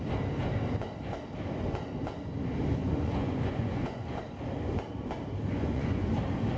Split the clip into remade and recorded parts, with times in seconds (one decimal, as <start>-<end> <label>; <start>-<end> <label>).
0.0-2.8 recorded; 2.8-4.2 remade; 4.2-5.5 recorded; 5.5-6.1 remade; 6.1-6.6 recorded